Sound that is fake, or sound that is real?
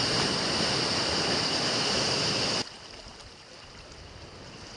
real